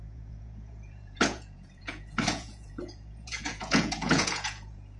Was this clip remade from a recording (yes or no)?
yes